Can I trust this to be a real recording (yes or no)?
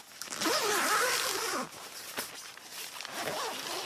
yes